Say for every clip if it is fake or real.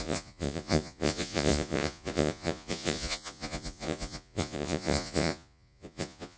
fake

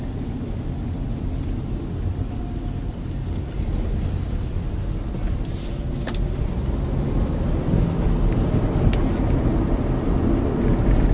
real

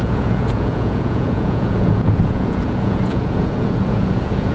fake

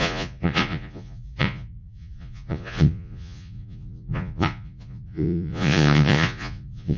fake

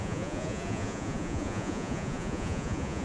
fake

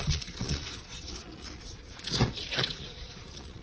fake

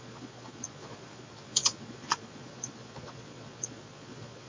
fake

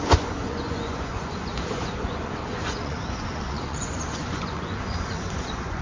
fake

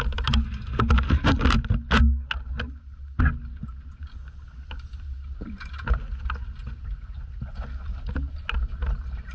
real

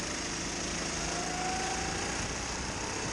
real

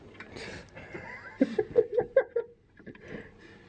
real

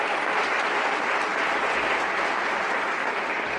real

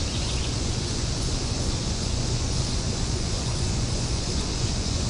fake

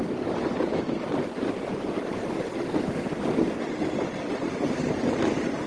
real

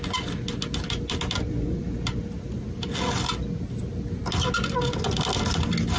real